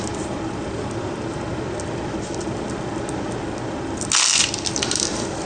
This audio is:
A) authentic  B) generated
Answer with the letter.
A